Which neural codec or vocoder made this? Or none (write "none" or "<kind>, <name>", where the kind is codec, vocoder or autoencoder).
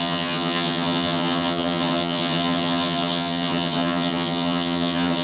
vocoder, HiFi-GAN